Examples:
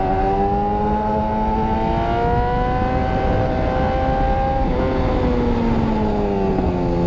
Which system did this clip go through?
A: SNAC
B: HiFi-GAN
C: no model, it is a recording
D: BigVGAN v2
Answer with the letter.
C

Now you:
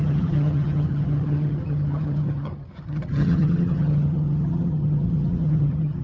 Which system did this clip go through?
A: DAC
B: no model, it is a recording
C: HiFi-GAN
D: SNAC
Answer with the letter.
C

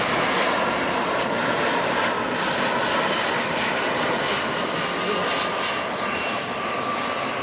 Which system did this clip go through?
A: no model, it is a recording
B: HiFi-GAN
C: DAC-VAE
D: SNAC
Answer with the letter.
A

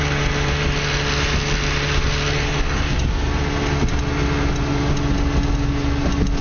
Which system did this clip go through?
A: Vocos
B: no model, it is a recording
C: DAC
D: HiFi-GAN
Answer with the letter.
B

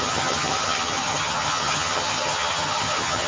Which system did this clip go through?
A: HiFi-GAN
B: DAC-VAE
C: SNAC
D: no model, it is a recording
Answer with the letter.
A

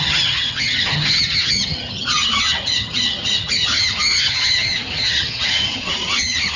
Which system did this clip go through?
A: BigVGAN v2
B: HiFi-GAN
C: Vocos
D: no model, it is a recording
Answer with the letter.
B